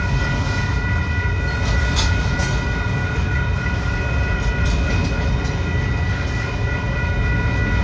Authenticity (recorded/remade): recorded